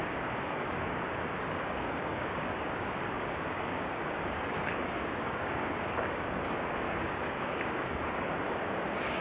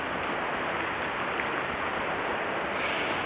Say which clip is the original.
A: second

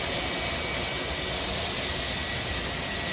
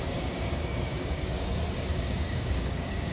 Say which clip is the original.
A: first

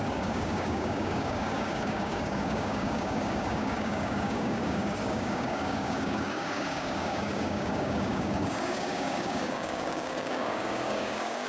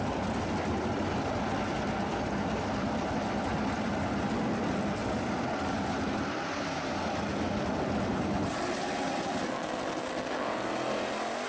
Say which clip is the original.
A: second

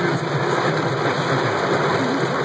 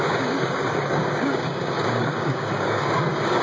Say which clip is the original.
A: first